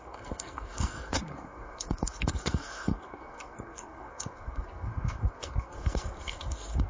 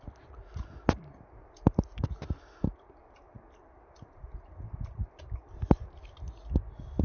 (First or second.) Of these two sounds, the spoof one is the first